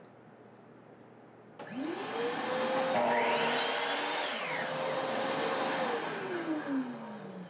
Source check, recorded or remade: recorded